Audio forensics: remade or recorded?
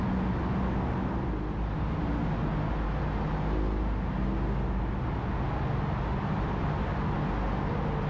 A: recorded